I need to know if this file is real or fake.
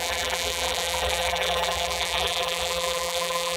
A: fake